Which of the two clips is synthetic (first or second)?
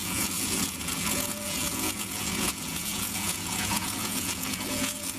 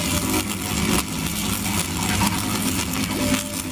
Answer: first